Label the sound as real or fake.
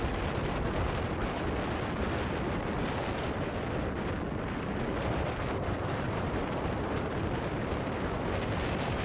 fake